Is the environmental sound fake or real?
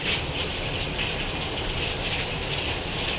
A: real